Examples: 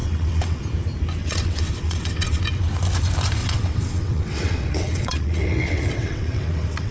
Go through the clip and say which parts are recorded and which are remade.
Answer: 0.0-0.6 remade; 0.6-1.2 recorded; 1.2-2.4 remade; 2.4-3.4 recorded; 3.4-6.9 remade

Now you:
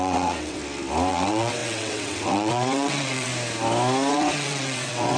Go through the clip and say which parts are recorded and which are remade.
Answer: 0.0-0.6 remade; 0.6-1.1 recorded; 1.1-3.3 remade; 3.3-4.1 recorded; 4.1-5.2 remade

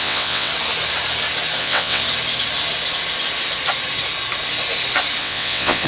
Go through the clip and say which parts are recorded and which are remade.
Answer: 0.0-0.5 remade; 0.5-1.6 recorded; 1.6-2.0 remade; 2.0-5.2 recorded; 5.2-5.9 remade

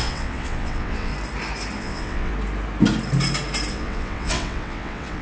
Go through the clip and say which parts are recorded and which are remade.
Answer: 0.0-1.1 remade; 1.1-1.8 recorded; 1.8-2.3 remade; 2.3-3.7 recorded; 3.7-5.2 remade

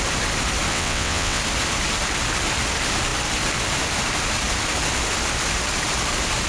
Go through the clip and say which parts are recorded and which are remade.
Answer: 0.0-0.7 recorded; 0.7-1.4 remade; 1.4-6.5 recorded

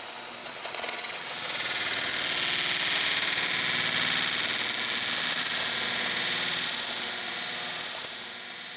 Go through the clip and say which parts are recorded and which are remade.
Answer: 0.0-0.4 recorded; 0.4-2.1 remade; 2.1-8.8 recorded

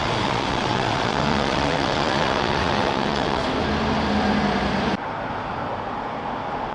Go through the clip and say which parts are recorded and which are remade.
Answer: 0.0-3.4 remade; 3.4-6.7 recorded

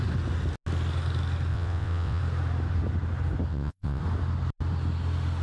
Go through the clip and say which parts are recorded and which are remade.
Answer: 0.0-1.5 recorded; 1.5-2.2 remade; 2.2-3.5 recorded; 3.5-4.0 remade; 4.0-5.4 recorded